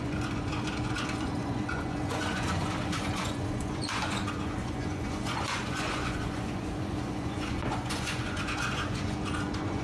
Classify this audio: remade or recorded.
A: remade